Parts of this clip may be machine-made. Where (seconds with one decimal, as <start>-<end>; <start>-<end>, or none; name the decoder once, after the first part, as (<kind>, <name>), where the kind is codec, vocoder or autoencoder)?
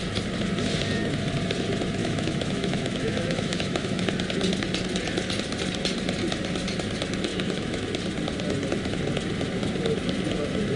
2.0-4.1 (autoencoder, DAC-VAE); 7.3-7.8